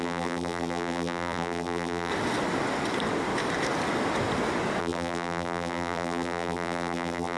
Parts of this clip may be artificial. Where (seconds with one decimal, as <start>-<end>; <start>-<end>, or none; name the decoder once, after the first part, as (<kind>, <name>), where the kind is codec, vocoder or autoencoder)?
0.0-2.1 (vocoder, BigVGAN v2); 4.8-7.4